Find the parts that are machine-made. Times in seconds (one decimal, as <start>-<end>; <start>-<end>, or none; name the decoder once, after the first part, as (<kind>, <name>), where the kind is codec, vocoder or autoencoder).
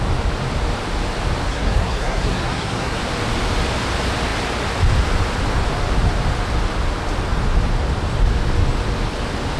1.5-3.0 (codec, SNAC)